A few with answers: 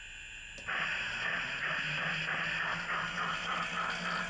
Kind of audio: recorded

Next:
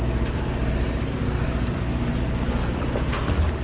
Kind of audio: remade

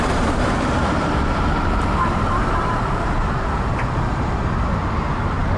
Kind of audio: remade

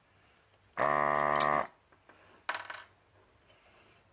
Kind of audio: recorded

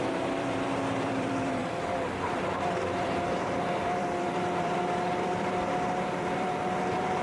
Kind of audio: remade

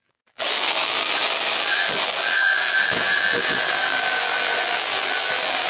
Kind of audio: remade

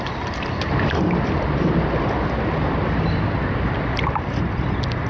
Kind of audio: remade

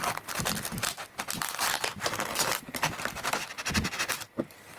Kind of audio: recorded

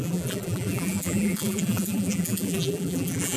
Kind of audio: remade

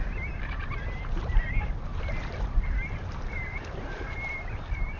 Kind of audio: remade